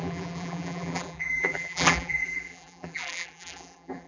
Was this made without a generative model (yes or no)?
no